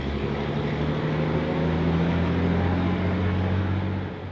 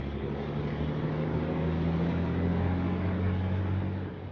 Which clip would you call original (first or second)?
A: first